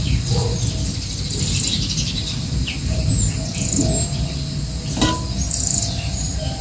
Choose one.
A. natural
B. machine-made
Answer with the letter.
A